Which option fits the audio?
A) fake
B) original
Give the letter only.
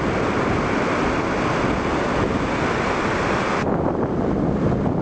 B